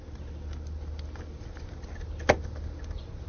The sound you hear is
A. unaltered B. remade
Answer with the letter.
A